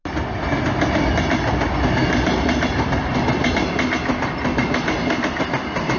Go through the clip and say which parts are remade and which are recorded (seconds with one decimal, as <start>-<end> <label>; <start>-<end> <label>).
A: 0.0-6.0 recorded